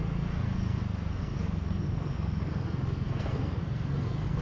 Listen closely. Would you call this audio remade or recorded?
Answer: remade